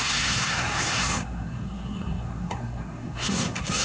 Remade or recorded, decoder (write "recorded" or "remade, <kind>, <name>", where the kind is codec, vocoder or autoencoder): remade, codec, SNAC